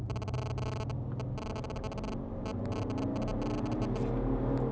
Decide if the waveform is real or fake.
real